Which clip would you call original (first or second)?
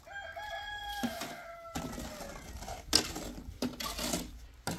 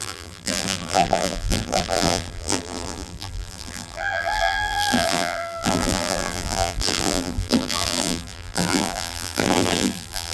first